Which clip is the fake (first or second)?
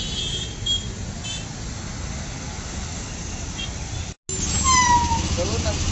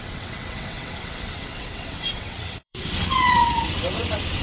second